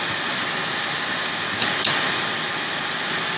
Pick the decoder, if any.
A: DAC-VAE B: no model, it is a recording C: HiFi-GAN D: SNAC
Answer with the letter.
B